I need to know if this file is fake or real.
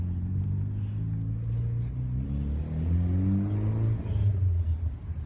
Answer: real